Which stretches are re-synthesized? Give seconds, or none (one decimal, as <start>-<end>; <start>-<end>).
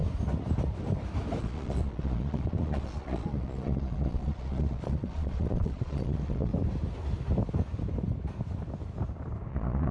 1.4-6.5; 9.5-9.9